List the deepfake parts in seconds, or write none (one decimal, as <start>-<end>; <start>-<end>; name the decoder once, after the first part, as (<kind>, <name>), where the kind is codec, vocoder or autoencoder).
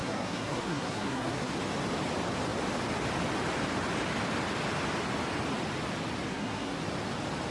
0.0-1.5 (codec, SNAC); 6.3-6.8